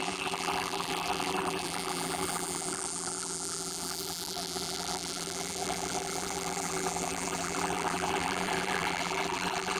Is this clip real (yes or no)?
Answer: no